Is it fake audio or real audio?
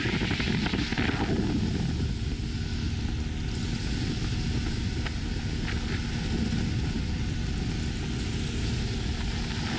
real